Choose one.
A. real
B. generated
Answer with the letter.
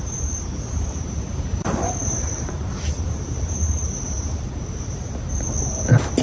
B